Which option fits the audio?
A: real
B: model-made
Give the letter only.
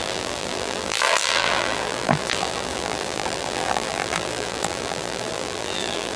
B